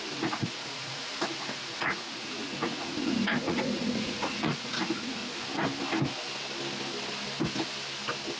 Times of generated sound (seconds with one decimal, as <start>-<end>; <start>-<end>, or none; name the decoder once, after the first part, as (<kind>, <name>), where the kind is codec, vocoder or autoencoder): 0.0-5.2 (vocoder, Vocos)